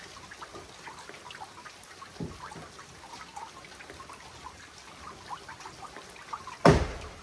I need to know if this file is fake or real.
real